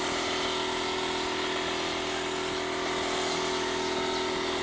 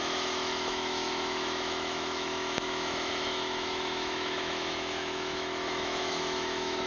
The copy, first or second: second